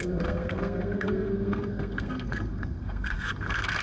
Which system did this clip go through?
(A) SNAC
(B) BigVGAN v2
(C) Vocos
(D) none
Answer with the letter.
A